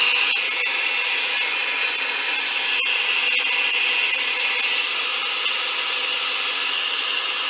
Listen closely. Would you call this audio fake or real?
real